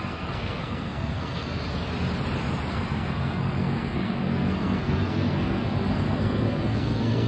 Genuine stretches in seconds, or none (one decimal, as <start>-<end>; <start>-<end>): 1.6-2.7